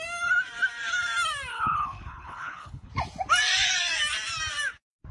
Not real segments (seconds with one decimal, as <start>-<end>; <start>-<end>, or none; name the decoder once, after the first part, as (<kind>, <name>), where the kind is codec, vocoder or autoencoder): 1.5-2.9 (codec, HILCodec)